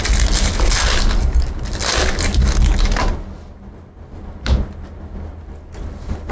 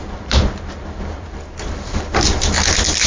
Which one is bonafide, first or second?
first